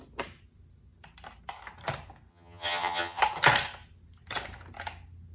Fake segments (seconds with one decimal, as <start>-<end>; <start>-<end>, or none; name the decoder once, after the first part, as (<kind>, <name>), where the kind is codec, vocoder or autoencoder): 2.3-3.2 (vocoder, HiFi-GAN)

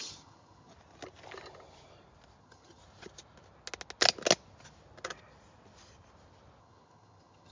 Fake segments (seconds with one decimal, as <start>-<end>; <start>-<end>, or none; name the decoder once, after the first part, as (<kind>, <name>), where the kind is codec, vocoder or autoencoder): 0.0-0.7 (vocoder, HiFi-GAN); 2.4-2.8; 6.6-7.5

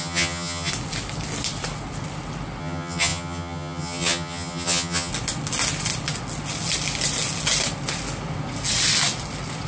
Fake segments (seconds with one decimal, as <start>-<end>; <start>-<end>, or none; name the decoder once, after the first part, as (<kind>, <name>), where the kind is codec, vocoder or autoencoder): 0.0-0.7 (vocoder, HiFi-GAN); 2.6-5.1

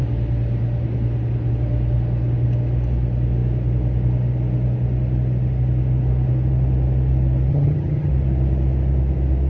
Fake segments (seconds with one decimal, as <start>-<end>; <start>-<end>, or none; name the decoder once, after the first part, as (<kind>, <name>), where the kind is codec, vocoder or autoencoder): 7.5-8.1 (vocoder, HiFi-GAN)